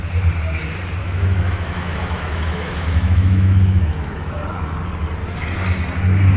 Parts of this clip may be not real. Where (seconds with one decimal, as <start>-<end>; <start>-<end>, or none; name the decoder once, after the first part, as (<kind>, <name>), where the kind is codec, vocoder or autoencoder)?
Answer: 1.0-4.4 (autoencoder, DAC-VAE)